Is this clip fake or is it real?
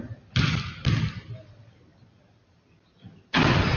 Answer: real